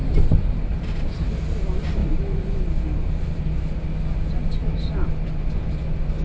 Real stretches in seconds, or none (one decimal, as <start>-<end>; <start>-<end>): 0.0-0.7; 1.3-2.0; 3.4-4.6; 5.1-6.2